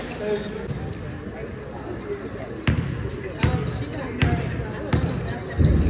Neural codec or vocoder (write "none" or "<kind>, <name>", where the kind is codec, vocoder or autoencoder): none